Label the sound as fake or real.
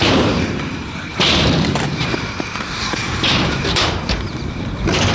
fake